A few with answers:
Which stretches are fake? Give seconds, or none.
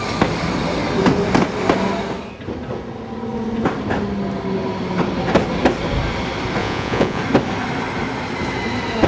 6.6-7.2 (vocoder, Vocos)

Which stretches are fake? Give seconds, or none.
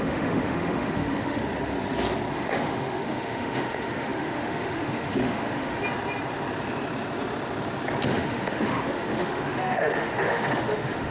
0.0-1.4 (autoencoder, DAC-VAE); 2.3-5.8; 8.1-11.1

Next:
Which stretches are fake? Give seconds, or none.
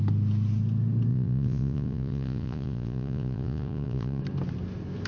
1.1-4.2 (vocoder, Vocos)